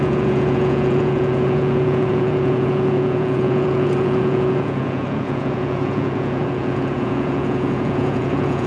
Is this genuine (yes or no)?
no